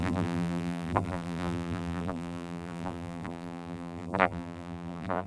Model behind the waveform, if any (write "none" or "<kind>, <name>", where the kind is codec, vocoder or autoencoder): vocoder, BigVGAN v2